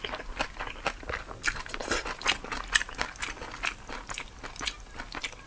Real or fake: real